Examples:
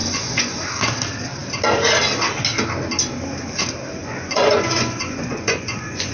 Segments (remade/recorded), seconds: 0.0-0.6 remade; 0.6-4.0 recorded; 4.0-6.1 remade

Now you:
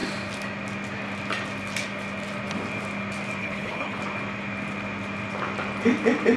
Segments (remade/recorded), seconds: 0.0-3.4 recorded; 3.4-4.0 remade; 4.0-6.4 recorded

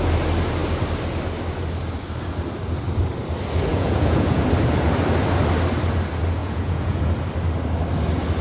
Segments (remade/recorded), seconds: 0.0-3.7 recorded; 3.7-4.4 remade; 4.4-6.4 recorded; 6.4-7.0 remade; 7.0-8.4 recorded